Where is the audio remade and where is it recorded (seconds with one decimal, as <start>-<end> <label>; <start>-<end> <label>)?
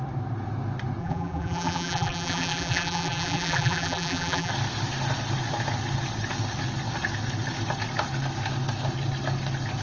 0.0-1.0 recorded; 1.0-4.5 remade; 4.5-9.8 recorded